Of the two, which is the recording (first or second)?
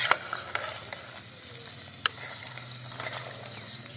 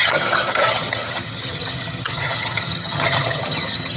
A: first